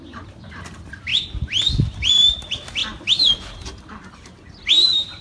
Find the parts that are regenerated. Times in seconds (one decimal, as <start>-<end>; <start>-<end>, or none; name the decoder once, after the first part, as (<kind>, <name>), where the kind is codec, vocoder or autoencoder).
none